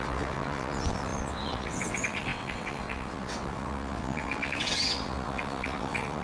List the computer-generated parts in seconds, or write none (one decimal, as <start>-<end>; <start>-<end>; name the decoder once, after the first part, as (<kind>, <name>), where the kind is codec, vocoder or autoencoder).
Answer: 0.0-6.2 (vocoder, WaveNeXt)